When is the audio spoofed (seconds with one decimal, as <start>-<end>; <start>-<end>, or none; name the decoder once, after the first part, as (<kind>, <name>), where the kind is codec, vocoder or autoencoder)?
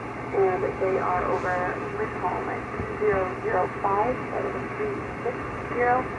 0.0-1.4 (vocoder, BigVGAN v2)